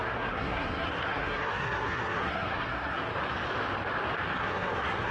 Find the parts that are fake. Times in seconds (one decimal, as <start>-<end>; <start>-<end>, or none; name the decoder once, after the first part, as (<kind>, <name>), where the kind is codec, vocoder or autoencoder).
0.0-3.1 (codec, SNAC); 4.4-5.1